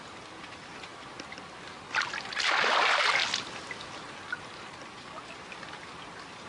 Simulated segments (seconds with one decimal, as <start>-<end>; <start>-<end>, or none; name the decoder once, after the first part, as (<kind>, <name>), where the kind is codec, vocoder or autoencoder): none